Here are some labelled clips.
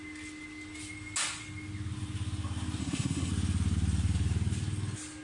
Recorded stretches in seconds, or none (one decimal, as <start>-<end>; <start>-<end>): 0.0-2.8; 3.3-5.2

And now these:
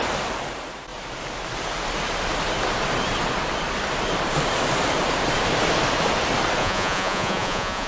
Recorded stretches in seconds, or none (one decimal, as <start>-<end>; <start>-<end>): 0.0-6.6

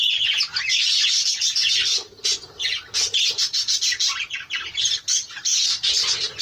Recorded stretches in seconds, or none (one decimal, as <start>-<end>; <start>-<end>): 2.3-6.4

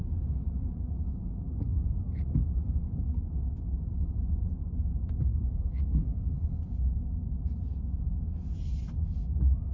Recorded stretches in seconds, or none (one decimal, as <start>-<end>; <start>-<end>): 0.0-5.3; 6.2-9.7

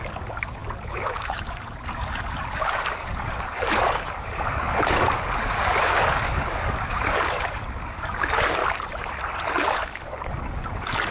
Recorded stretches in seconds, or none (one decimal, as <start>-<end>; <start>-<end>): 8.6-9.6

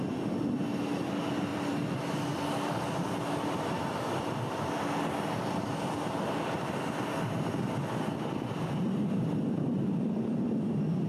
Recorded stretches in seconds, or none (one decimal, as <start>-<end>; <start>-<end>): 0.0-1.5; 4.5-11.1

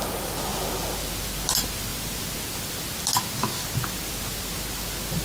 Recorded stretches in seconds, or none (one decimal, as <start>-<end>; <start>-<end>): 0.0-5.2